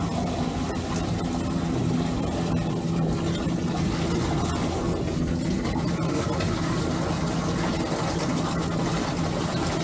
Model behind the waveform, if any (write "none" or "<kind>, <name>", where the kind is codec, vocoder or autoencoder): none